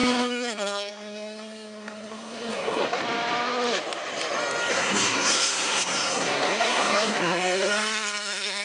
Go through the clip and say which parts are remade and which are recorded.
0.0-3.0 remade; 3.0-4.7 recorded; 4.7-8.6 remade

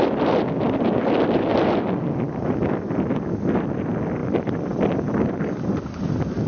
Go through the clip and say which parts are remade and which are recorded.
0.0-6.5 recorded

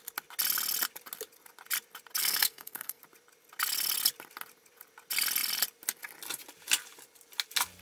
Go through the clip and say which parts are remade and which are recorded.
0.0-2.2 recorded; 2.2-3.0 remade; 3.0-7.8 recorded

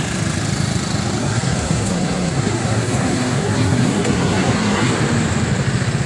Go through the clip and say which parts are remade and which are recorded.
0.0-1.2 recorded; 1.2-4.9 remade; 4.9-6.1 recorded

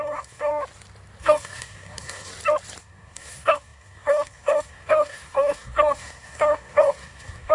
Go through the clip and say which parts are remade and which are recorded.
0.0-0.5 remade; 0.5-1.2 recorded; 1.2-2.3 remade; 2.3-2.8 recorded; 2.8-7.5 remade

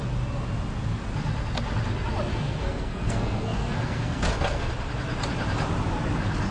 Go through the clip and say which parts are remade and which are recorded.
0.0-2.3 recorded; 2.3-4.7 remade; 4.7-6.5 recorded